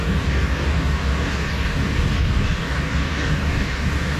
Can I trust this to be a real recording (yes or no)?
no